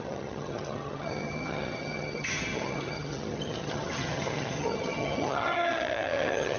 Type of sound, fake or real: fake